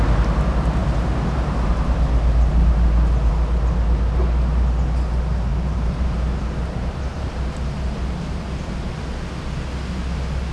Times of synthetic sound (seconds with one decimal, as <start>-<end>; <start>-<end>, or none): 5.5-8.9